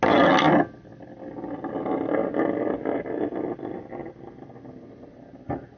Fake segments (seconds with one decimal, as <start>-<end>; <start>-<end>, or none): none